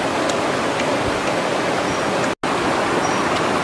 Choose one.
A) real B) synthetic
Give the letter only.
A